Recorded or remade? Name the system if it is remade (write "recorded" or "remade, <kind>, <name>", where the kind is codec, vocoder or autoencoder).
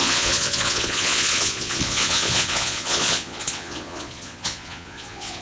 remade, vocoder, Vocos